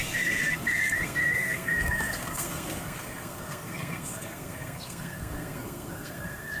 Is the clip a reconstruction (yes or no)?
yes